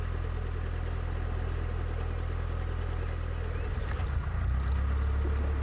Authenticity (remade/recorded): recorded